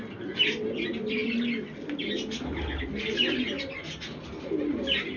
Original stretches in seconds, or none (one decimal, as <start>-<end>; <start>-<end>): 0.0-5.2